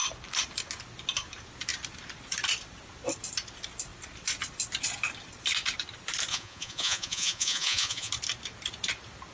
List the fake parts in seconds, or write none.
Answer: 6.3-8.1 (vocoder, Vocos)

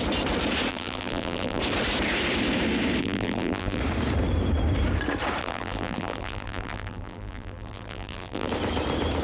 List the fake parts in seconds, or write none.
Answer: 0.7-1.6 (vocoder, BigVGAN v2); 3.0-3.8; 5.4-8.5

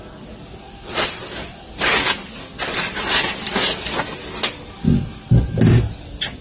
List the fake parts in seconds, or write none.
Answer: none

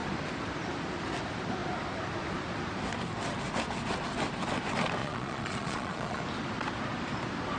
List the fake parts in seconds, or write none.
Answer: 5.0-6.2 (vocoder, Vocos)